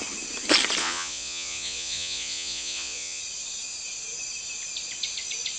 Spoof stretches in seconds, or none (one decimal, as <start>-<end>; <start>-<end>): 0.8-3.2